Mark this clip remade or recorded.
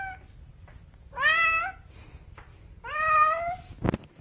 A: recorded